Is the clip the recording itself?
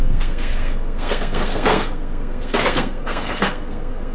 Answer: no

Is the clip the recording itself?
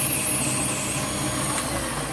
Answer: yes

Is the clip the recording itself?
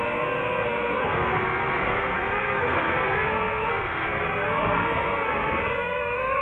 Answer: no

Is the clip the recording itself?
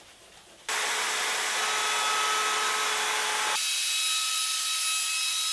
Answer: yes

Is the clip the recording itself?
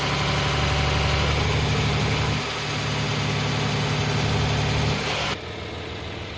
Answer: yes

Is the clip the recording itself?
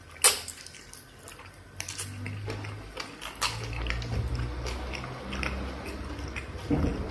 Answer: yes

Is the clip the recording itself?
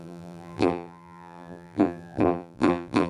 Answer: no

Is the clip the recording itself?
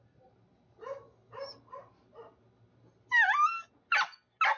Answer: yes